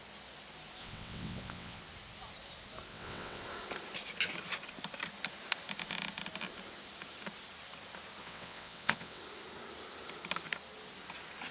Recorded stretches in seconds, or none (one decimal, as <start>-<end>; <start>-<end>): 0.0-0.8; 1.8-2.9; 3.4-8.2; 9.2-11.5